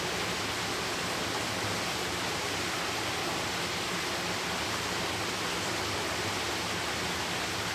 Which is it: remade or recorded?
recorded